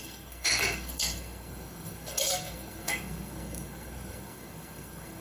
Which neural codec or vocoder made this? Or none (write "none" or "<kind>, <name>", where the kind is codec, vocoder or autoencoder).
codec, SNAC